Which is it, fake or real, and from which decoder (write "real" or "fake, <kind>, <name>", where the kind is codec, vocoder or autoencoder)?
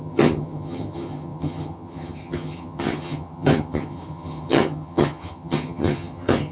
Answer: fake, vocoder, HiFi-GAN